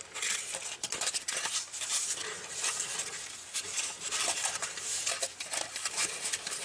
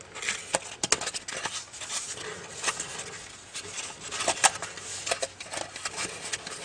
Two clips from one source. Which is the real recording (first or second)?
second